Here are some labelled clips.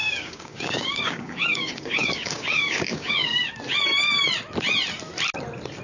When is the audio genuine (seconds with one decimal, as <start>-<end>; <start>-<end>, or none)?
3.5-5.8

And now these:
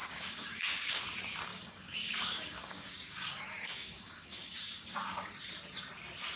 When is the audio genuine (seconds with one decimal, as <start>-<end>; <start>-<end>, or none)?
1.0-1.5; 5.3-6.4

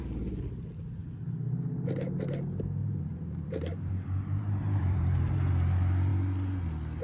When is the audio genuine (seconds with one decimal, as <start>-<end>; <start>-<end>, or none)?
0.0-2.8; 5.5-7.0

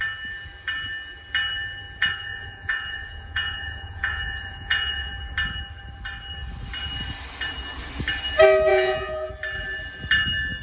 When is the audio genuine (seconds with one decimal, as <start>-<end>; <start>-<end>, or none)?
0.0-2.0; 5.1-8.7; 9.3-10.6